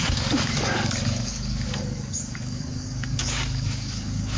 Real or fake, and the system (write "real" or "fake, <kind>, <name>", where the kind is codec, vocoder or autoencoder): fake, codec, DAC